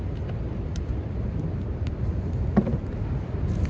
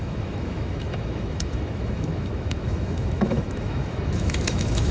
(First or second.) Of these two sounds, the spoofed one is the second